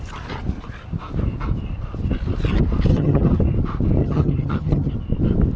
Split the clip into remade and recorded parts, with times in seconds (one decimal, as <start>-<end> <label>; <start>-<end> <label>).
0.0-2.9 recorded; 2.9-3.4 remade; 3.4-4.0 recorded; 4.0-4.9 remade; 4.9-5.6 recorded